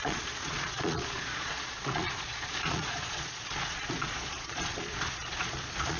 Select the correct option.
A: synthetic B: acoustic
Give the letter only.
A